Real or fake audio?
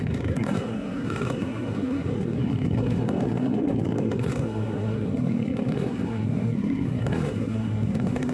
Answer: fake